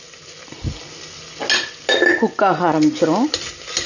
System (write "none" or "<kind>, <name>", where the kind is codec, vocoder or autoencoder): none